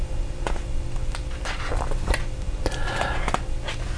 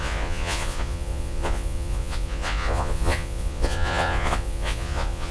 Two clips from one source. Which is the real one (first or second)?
first